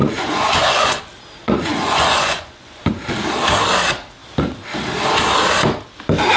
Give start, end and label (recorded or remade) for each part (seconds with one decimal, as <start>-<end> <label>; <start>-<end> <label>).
0.0-1.0 remade; 1.0-1.4 recorded; 1.4-2.8 remade; 2.8-6.4 recorded